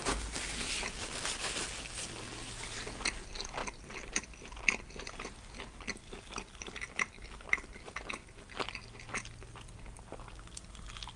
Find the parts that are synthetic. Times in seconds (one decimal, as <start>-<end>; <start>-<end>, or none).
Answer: none